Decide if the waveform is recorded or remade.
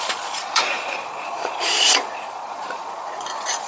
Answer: remade